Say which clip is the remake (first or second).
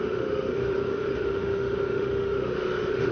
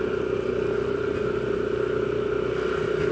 first